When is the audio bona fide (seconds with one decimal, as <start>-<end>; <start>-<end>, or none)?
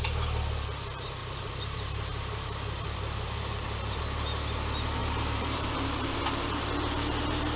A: 0.0-1.2; 4.0-5.0; 6.2-7.6